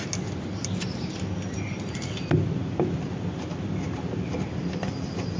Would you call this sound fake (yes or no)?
no